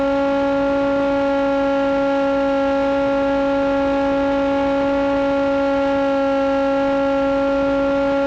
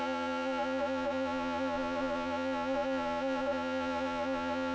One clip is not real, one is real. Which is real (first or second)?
first